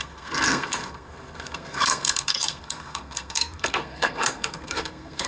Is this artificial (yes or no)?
yes